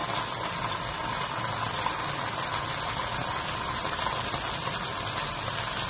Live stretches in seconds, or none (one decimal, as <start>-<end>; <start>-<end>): 0.0-5.9